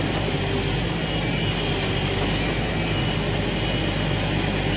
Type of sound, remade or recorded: recorded